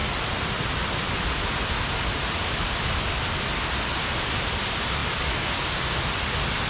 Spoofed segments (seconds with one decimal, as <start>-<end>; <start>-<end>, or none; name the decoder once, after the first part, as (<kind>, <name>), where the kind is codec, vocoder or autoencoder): none